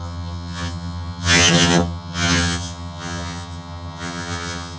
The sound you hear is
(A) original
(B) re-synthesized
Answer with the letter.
B